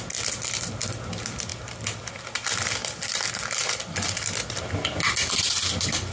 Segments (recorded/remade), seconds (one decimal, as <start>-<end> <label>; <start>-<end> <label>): 0.0-2.8 recorded; 2.8-4.6 remade; 4.6-6.1 recorded

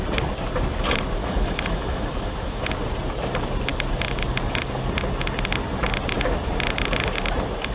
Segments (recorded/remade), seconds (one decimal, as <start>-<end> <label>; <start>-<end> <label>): 0.0-1.2 recorded; 1.2-2.7 remade; 2.7-7.7 recorded

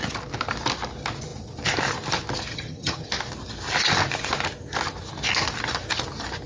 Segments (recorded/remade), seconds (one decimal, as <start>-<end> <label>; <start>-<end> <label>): 0.0-2.5 recorded; 2.5-3.1 remade; 3.1-6.5 recorded

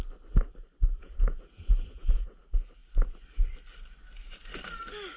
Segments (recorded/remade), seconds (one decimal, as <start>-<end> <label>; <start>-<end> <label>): 0.0-1.0 recorded; 1.0-2.4 remade; 2.4-5.2 recorded

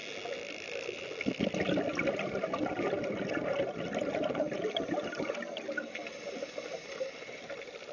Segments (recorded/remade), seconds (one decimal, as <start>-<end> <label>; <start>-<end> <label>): 0.0-7.9 recorded